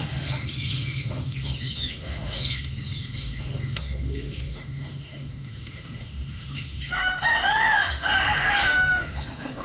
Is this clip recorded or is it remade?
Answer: remade